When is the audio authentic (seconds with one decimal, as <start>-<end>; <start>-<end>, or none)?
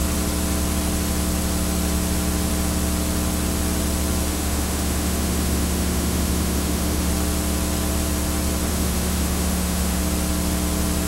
0.0-4.3; 7.1-8.7; 10.0-11.1